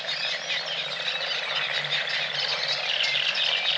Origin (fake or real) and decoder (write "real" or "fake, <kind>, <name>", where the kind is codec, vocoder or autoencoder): real